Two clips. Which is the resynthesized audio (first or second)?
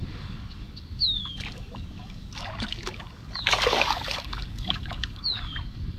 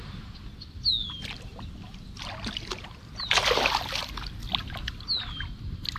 first